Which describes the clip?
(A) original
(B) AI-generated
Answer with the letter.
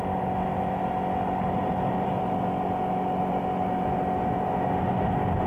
A